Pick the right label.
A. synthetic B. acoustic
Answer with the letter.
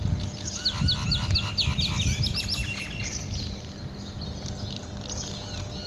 B